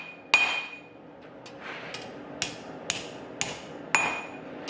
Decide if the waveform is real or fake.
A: real